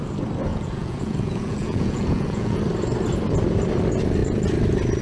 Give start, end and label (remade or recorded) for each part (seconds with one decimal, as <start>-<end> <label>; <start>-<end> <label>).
0.0-0.5 recorded; 0.5-2.6 remade; 2.6-5.0 recorded